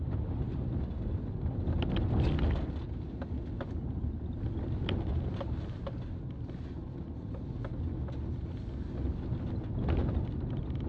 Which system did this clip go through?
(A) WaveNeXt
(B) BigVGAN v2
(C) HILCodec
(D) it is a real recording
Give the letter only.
D